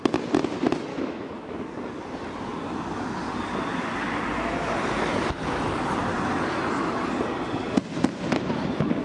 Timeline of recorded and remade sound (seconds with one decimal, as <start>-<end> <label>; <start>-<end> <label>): 0.0-0.9 recorded; 0.9-1.7 remade; 1.7-9.0 recorded